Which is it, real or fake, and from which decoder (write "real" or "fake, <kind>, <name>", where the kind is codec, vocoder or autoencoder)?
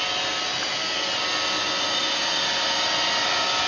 real